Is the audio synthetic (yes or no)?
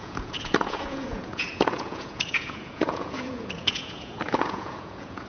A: yes